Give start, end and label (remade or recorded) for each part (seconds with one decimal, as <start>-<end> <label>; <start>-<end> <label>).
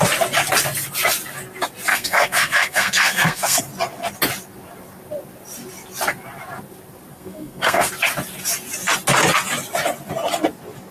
0.0-1.9 recorded; 1.9-3.6 remade; 3.6-7.1 recorded; 7.1-7.9 remade; 7.9-10.9 recorded